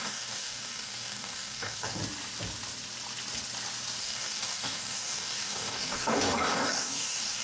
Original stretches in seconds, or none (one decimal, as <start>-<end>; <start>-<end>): 2.0-4.0